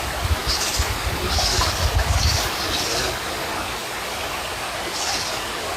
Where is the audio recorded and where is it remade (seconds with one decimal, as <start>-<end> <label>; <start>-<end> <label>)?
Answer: 0.0-5.8 remade